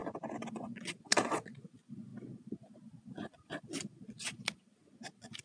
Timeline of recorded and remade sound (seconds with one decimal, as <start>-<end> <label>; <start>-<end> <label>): 0.0-0.5 recorded; 0.5-5.4 remade